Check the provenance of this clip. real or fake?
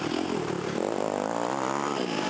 real